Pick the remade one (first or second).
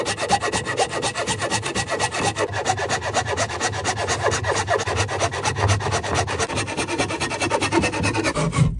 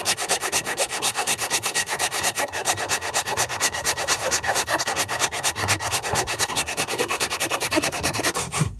second